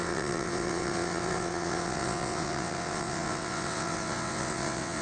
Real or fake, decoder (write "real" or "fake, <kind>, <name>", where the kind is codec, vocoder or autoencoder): fake, vocoder, WaveNeXt